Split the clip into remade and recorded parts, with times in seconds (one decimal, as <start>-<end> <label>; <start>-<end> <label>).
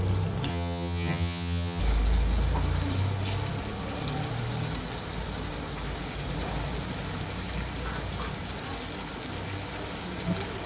0.0-0.5 recorded; 0.5-1.8 remade; 1.8-10.7 recorded